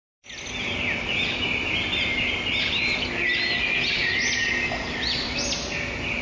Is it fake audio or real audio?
real